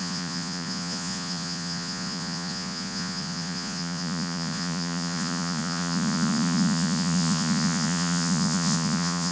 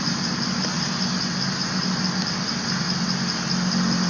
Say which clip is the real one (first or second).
second